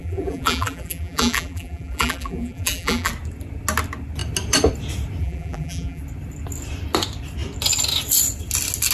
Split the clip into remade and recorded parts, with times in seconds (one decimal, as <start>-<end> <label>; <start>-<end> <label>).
0.0-3.1 remade; 3.1-5.2 recorded; 5.2-6.0 remade; 6.0-8.9 recorded